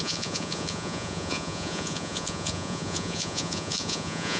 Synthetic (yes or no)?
yes